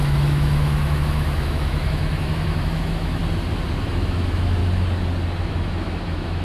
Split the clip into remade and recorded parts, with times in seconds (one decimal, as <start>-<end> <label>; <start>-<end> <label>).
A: 0.0-3.2 remade; 3.2-3.8 recorded; 3.8-4.6 remade; 4.6-5.4 recorded; 5.4-6.4 remade